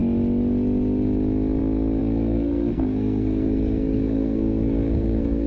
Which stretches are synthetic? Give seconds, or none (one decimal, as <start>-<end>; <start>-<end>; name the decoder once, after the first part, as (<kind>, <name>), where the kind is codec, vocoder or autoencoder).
2.0-5.5 (codec, SNAC)

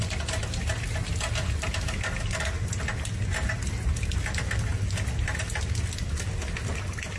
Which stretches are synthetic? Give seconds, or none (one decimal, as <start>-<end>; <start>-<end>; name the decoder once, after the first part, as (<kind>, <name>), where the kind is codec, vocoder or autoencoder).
none

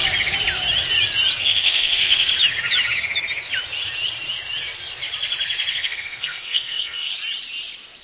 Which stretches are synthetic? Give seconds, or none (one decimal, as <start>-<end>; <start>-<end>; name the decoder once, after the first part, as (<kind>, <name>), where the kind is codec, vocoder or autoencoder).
1.4-2.3 (codec, SNAC); 5.7-7.1

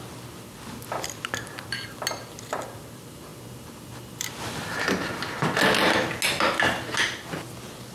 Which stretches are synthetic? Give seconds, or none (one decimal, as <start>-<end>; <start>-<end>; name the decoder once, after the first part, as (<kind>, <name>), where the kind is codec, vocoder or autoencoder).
none

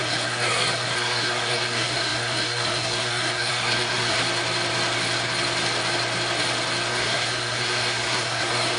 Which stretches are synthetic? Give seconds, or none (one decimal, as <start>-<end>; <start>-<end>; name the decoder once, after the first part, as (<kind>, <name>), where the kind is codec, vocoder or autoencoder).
0.0-4.2 (codec, SNAC); 6.9-8.8

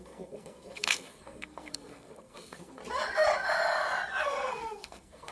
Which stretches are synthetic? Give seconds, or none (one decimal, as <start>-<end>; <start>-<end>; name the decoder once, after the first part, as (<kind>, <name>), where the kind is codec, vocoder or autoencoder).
0.0-2.8 (codec, SNAC); 4.2-5.3

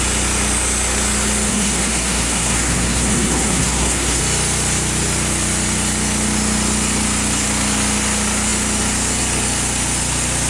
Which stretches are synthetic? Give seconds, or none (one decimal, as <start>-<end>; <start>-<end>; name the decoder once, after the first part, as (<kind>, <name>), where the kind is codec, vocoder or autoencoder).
1.5-4.2 (codec, SNAC)